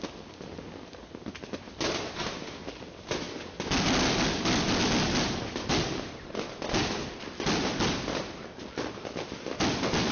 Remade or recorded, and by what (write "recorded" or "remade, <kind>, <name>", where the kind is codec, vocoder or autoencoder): recorded